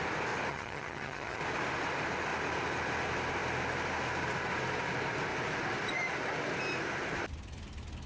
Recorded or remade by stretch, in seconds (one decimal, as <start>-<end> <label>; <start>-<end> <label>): 0.0-0.5 recorded; 0.5-1.4 remade; 1.4-8.1 recorded